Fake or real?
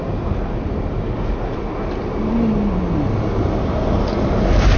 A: real